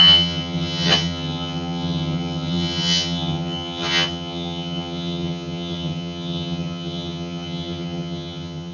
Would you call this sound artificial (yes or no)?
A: yes